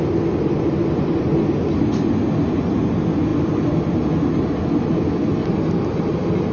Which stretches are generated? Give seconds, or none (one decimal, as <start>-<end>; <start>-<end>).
none